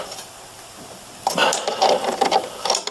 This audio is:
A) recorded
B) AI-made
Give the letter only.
B